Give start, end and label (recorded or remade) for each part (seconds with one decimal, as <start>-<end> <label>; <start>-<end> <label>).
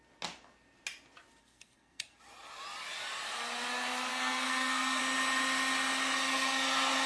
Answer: 0.0-1.4 recorded; 1.4-2.2 remade; 2.2-4.1 recorded; 4.1-5.0 remade; 5.0-7.1 recorded